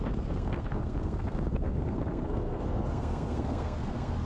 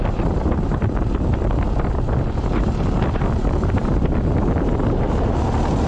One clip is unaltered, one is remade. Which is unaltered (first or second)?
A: second